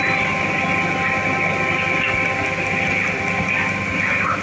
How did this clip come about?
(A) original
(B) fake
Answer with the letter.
A